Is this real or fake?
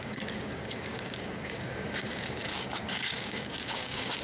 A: fake